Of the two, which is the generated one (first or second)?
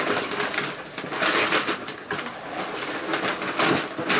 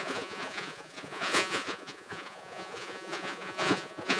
second